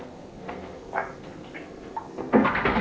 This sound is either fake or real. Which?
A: fake